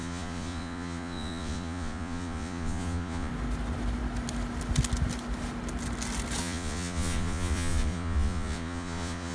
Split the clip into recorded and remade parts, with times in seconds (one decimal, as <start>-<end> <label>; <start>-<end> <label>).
0.0-3.3 remade; 3.3-6.4 recorded; 6.4-9.3 remade